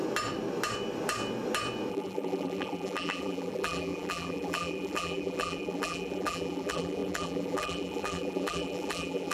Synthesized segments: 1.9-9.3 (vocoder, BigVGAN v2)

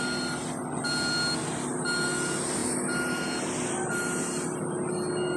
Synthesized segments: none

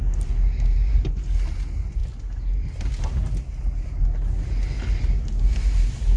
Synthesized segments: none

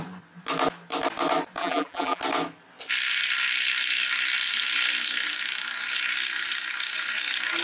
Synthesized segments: 1.6-2.2 (vocoder, BigVGAN v2)

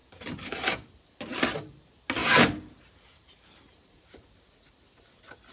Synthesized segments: 0.0-1.0 (vocoder, BigVGAN v2); 2.2-4.5